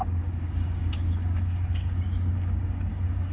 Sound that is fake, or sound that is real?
fake